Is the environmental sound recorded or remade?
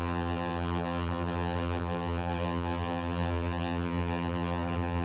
remade